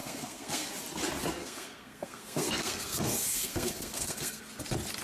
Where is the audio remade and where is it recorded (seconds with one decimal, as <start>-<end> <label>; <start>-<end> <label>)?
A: 0.0-0.7 remade; 0.7-1.4 recorded; 1.4-4.4 remade; 4.4-5.0 recorded